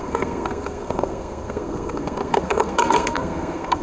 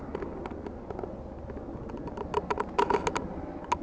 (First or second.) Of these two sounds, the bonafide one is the second